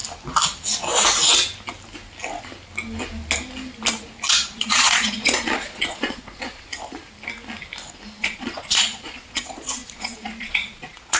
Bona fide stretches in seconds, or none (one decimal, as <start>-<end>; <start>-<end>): 0.0-4.3; 6.7-8.2